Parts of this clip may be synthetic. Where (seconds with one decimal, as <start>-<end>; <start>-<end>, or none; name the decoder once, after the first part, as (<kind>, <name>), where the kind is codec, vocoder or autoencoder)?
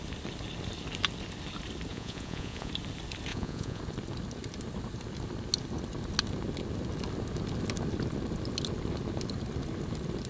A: 1.9-2.7 (vocoder, Vocos); 3.3-3.8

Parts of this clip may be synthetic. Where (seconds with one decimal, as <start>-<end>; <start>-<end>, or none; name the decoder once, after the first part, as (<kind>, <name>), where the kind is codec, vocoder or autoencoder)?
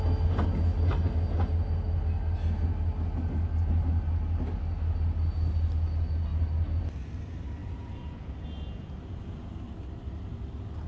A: 7.6-9.5 (vocoder, Vocos)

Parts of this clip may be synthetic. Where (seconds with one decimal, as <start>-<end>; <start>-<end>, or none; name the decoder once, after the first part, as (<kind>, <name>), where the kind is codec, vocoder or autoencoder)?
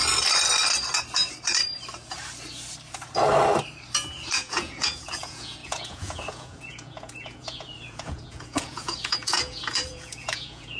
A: 4.3-10.8 (vocoder, Vocos)